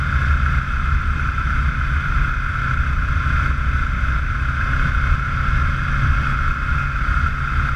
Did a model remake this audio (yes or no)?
no